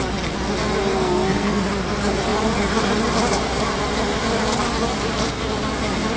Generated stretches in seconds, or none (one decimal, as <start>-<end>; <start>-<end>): 0.9-1.6